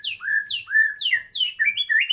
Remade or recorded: recorded